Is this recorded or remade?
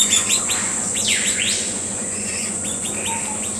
remade